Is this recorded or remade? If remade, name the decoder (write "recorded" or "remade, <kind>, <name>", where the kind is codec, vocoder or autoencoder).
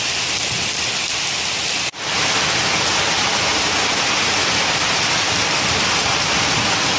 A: recorded